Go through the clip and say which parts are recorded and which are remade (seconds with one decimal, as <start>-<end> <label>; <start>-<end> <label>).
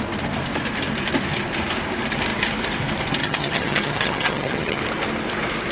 0.0-3.2 recorded; 3.2-4.8 remade; 4.8-5.7 recorded